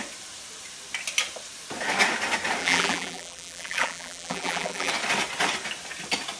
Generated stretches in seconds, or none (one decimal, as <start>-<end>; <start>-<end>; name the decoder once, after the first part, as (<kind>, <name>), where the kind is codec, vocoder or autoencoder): 2.6-4.9 (vocoder, BigVGAN v2)